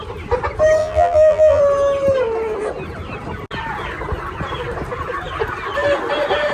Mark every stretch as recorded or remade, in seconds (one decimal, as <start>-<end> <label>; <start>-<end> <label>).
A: 0.0-0.8 recorded; 0.8-1.6 remade; 1.6-6.5 recorded